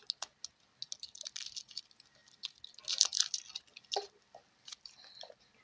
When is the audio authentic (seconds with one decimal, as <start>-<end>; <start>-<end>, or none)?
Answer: 0.0-5.6